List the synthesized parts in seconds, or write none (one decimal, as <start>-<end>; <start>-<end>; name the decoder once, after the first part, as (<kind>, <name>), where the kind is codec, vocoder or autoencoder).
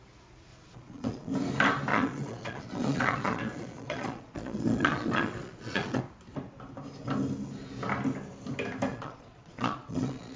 0.5-1.3 (vocoder, Vocos); 1.9-6.0; 8.9-10.4